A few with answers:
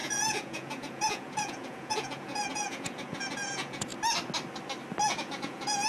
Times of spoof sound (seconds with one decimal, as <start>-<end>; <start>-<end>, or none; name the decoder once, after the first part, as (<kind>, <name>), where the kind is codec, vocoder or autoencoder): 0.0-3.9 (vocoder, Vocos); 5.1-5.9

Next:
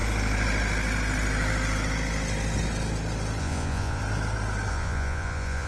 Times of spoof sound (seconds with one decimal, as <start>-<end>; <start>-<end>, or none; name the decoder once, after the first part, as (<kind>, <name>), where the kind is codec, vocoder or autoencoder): 3.4-4.0 (vocoder, Vocos); 4.7-5.7

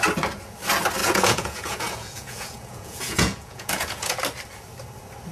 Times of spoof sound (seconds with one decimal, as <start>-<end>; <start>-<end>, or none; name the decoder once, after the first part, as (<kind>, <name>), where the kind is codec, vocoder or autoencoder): 1.0-4.2 (vocoder, Vocos)

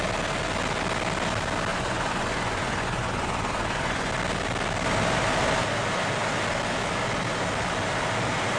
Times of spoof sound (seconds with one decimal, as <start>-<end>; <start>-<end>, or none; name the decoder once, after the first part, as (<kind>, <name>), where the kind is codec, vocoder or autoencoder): 1.7-4.1 (vocoder, Vocos)

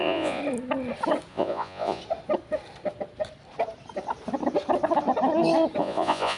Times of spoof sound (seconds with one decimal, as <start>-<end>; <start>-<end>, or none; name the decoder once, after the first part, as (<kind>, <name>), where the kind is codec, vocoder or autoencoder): 0.0-0.4 (vocoder, Vocos); 1.3-2.0; 5.8-6.4